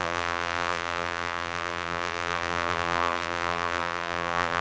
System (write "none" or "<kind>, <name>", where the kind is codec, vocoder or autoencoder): vocoder, BigVGAN v2